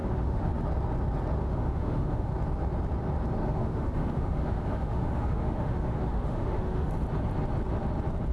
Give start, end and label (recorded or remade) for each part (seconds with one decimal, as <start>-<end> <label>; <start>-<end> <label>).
0.0-0.5 remade; 0.5-1.4 recorded; 1.4-2.3 remade; 2.3-3.4 recorded; 3.4-6.9 remade; 6.9-8.3 recorded